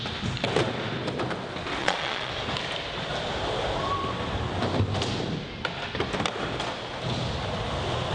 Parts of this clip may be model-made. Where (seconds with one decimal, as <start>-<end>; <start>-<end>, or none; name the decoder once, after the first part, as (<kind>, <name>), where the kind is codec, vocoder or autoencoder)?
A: 1.8-2.3 (vocoder, Vocos)